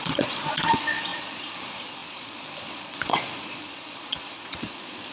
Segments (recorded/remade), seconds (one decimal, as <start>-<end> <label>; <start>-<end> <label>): 0.0-5.1 remade